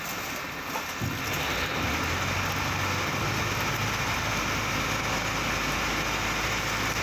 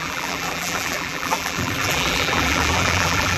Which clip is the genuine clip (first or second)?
first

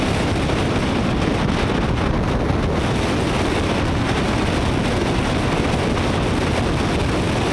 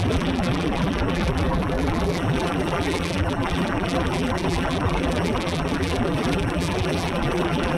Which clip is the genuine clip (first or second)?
first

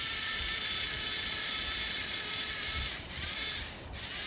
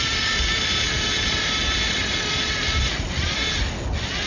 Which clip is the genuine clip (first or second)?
second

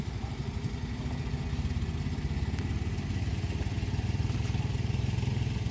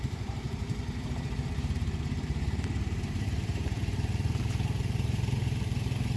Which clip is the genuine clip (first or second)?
first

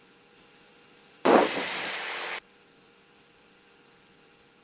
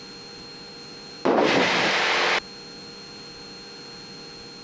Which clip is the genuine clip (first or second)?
second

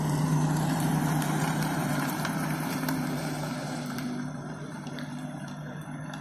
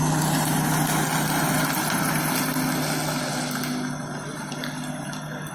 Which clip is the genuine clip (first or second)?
second